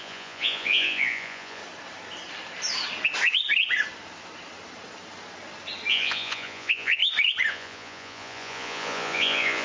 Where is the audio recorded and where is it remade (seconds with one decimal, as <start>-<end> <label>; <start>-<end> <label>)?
0.0-1.6 remade; 1.6-5.9 recorded; 5.9-7.0 remade; 7.0-7.5 recorded; 7.5-9.6 remade